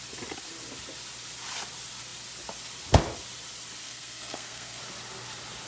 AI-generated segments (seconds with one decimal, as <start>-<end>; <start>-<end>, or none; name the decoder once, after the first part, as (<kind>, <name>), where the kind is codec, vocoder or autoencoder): 3.8-4.8 (codec, SNAC)